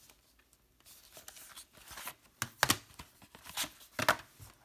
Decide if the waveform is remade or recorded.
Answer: recorded